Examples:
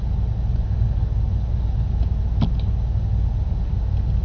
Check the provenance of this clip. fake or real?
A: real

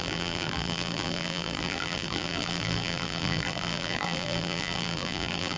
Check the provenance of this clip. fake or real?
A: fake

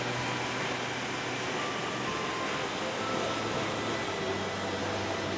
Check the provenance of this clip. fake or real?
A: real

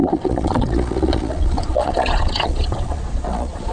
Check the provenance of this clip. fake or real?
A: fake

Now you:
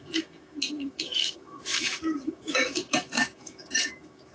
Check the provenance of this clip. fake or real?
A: fake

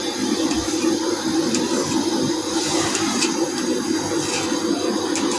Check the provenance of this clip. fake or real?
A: real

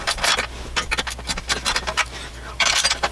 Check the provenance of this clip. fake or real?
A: real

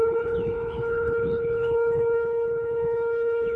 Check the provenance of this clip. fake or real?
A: fake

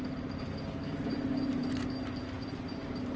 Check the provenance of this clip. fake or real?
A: fake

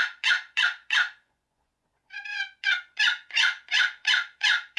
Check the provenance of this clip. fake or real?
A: fake